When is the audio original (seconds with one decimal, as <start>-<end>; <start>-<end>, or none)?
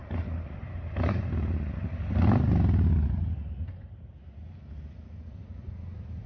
0.0-6.3